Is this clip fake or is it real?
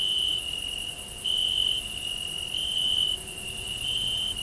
real